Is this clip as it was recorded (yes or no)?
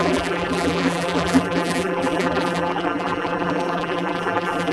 no